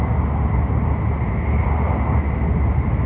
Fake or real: real